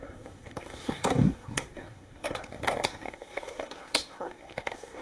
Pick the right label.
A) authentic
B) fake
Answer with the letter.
B